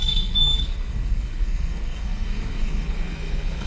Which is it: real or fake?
fake